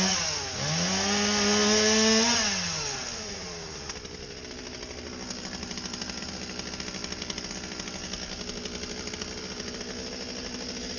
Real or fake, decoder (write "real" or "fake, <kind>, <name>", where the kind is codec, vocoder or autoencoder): real